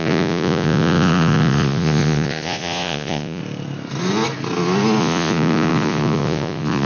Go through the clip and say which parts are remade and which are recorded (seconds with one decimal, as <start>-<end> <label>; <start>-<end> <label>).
0.0-3.4 remade; 3.4-5.0 recorded; 5.0-6.9 remade